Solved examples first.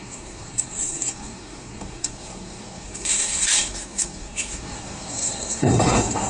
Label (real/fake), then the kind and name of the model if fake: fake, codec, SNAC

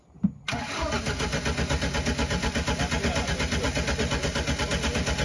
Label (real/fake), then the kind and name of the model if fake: real